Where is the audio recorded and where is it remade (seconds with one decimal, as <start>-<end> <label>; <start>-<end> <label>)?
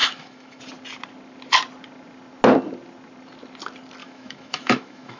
0.0-0.6 remade; 0.6-4.0 recorded; 4.0-5.2 remade